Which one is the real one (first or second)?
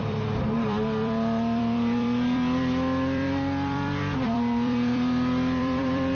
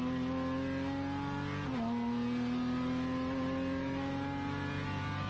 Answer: second